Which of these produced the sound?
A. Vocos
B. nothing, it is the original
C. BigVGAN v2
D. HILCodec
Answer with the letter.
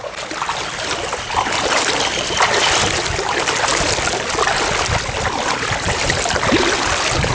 B